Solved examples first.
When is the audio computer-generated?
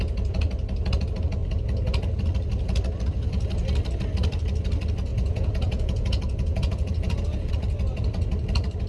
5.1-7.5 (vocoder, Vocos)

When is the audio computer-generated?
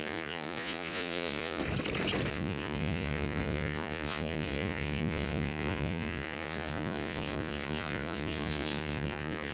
0.0-1.6 (vocoder, Vocos); 2.3-9.5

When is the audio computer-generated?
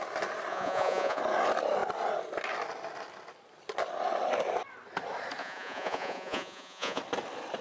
0.5-1.2 (vocoder, Vocos); 5.4-7.0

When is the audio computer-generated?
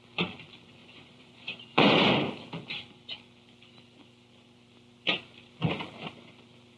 0.8-2.1 (vocoder, Vocos)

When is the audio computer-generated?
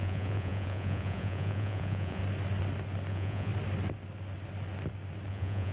0.0-2.2 (vocoder, Vocos); 3.1-3.5; 5.3-5.7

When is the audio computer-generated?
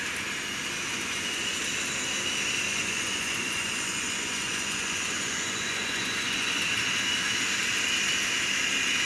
0.9-1.6 (vocoder, Vocos); 2.7-6.6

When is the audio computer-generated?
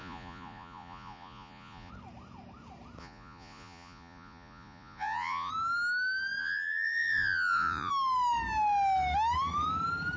0.0-1.9 (vocoder, Vocos); 3.0-5.5; 6.4-7.9